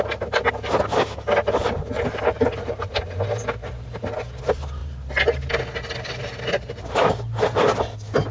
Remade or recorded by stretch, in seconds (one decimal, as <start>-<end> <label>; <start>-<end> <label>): 0.0-8.3 recorded